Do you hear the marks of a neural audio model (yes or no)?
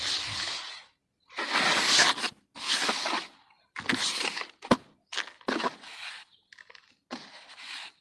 no